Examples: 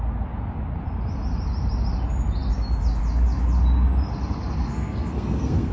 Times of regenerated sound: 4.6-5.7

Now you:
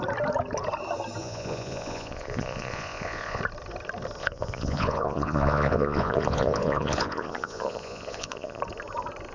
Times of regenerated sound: 1.2-3.4; 4.2-8.6

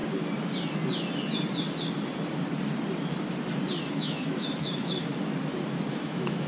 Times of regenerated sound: 3.9-5.1; 5.9-6.5

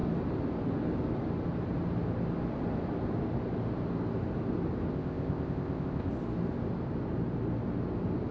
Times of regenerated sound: 4.9-6.1

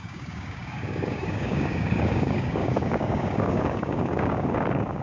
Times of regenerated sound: 0.0-5.0

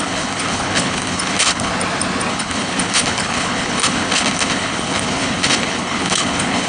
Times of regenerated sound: 0.0-1.7; 2.3-6.7